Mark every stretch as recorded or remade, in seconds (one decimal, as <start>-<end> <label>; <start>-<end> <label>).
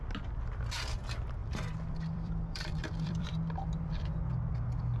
0.0-1.4 recorded; 1.4-3.3 remade; 3.3-5.0 recorded